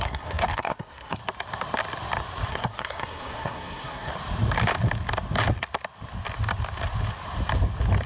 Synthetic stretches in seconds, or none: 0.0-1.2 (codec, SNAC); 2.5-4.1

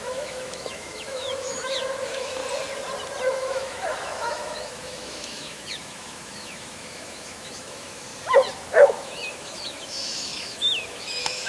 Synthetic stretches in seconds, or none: 0.0-2.4 (autoencoder, DAC-VAE); 3.3-8.1; 8.7-11.5

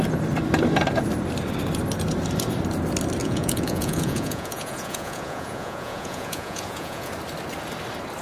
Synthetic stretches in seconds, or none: 3.2-7.1 (vocoder, Vocos)

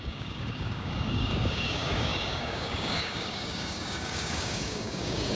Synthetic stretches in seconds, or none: 0.0-5.4 (codec, DAC)

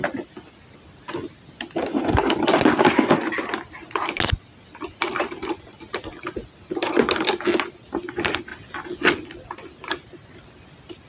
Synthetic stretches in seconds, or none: none

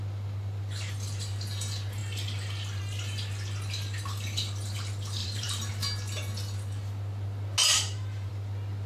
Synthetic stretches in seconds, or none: 5.2-5.7 (vocoder, BigVGAN v2); 7.7-8.3

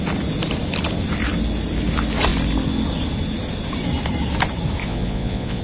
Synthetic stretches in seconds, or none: 4.8-5.6 (vocoder, Vocos)